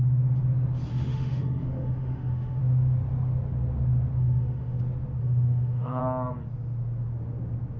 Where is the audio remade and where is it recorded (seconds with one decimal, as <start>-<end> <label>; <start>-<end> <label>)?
0.0-0.9 recorded; 0.9-2.6 remade; 2.6-4.2 recorded; 4.2-4.8 remade; 4.8-5.2 recorded; 5.2-6.0 remade; 6.0-7.8 recorded